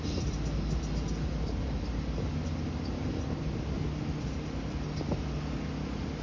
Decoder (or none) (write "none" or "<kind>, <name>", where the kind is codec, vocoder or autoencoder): none